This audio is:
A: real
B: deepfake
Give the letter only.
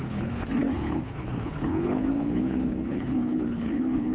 B